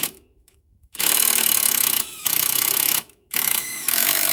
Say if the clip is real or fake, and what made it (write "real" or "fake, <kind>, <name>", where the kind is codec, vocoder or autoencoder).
fake, autoencoder, DAC-VAE